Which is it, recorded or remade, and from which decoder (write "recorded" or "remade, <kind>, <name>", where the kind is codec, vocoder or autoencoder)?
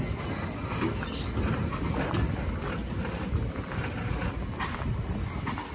recorded